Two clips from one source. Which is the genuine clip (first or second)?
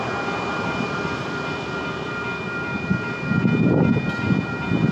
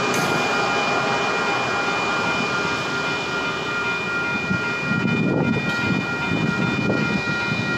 second